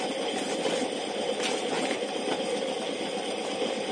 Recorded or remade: recorded